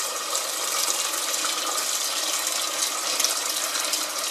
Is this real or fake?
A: real